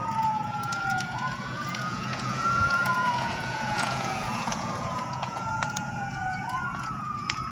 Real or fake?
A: fake